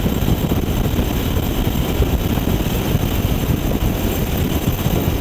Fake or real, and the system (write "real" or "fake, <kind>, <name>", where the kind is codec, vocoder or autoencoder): real